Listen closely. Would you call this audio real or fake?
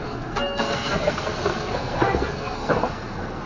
fake